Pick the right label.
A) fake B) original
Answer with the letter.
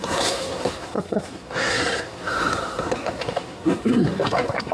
A